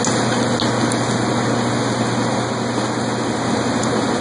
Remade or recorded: recorded